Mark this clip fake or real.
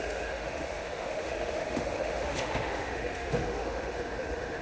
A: fake